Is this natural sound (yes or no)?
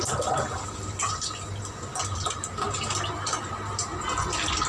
yes